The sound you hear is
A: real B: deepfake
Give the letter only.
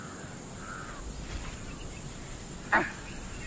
A